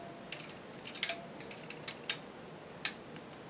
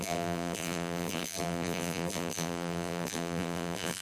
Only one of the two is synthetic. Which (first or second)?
second